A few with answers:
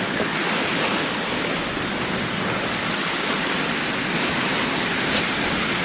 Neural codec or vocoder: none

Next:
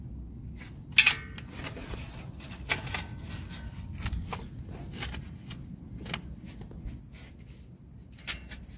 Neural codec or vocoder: none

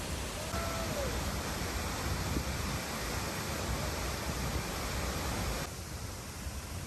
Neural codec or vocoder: none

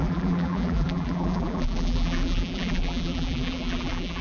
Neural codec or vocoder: vocoder, BigVGAN v2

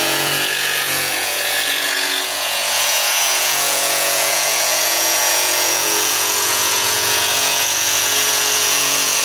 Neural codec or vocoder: vocoder, Vocos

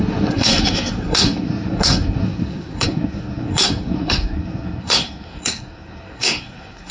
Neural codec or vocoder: codec, SNAC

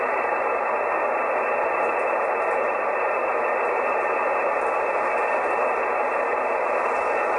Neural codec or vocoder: none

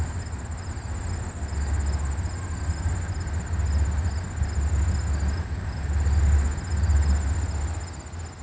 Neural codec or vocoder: none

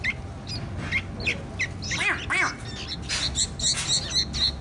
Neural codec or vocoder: none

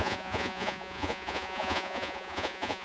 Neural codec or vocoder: vocoder, Vocos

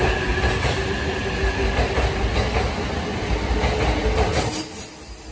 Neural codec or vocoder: none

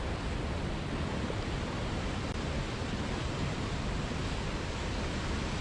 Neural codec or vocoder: none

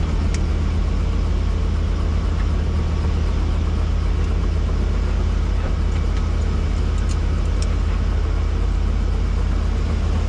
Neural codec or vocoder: none